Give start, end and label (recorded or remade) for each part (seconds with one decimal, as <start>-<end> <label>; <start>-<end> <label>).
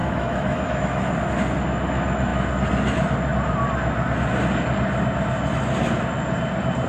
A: 0.0-1.1 remade; 1.1-6.9 recorded